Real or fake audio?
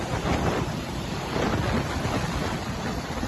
fake